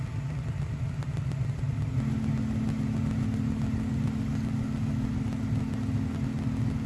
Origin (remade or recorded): recorded